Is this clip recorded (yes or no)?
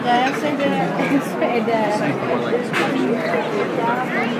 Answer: yes